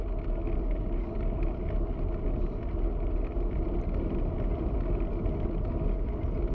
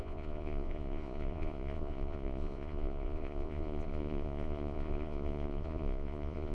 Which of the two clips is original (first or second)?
first